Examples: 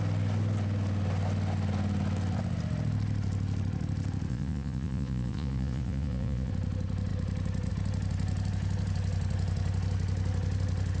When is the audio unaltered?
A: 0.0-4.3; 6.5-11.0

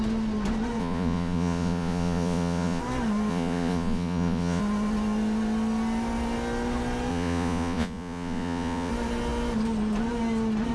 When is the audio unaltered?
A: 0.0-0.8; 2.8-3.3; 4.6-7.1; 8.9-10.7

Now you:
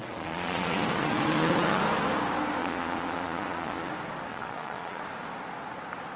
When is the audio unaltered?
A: 1.8-2.6; 3.9-4.3; 5.0-6.2

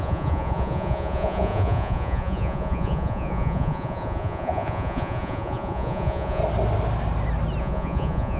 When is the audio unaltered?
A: 6.4-7.6